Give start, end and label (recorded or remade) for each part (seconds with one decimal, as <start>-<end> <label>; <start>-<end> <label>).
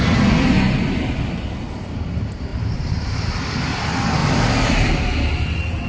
0.0-2.5 recorded; 2.5-3.3 remade; 3.3-4.2 recorded; 4.2-4.9 remade; 4.9-5.9 recorded